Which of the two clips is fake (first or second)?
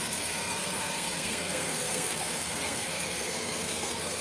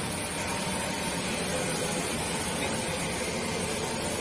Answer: first